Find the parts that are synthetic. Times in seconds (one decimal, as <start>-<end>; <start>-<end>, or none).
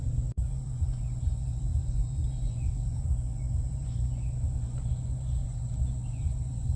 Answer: 0.0-6.8